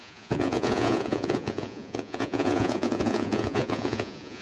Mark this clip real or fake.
fake